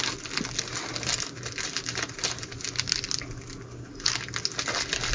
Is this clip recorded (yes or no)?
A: yes